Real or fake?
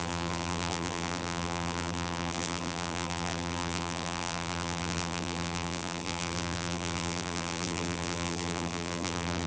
fake